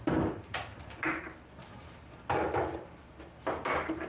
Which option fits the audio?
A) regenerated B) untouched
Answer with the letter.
B